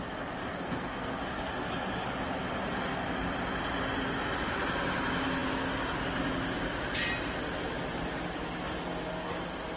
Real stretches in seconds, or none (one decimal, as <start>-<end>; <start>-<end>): 0.0-0.5; 1.2-9.8